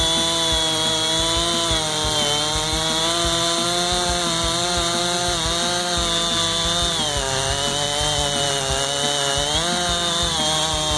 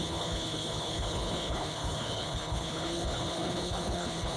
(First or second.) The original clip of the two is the first